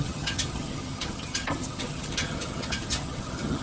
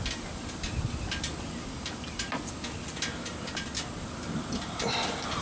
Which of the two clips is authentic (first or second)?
second